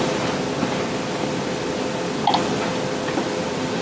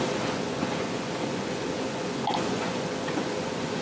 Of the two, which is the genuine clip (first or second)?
first